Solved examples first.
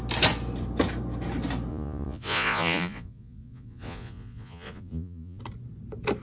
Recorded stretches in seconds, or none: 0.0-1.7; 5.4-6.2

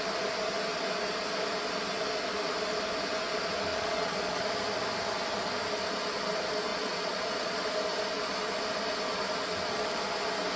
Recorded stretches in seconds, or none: 0.0-3.7; 4.4-6.7; 7.6-10.6

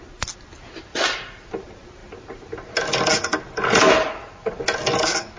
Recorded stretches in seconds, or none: 0.0-0.9; 1.5-4.0; 4.6-5.4

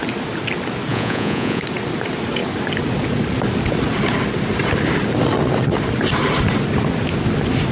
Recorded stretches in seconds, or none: 0.0-0.9; 1.6-7.7